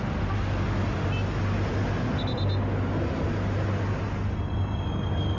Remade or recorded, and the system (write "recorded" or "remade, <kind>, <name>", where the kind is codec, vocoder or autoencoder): recorded